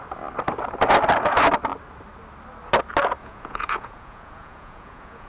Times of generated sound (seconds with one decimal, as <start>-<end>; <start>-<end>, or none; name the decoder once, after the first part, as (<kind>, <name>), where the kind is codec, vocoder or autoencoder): 3.2-5.3 (vocoder, Vocos)